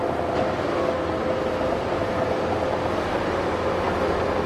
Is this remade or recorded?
recorded